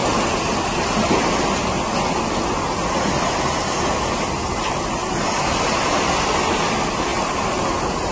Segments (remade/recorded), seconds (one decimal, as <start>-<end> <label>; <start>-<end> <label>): 0.0-8.1 recorded